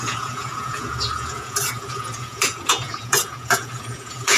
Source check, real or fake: fake